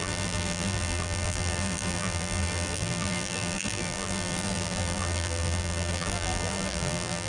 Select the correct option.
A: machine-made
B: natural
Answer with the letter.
A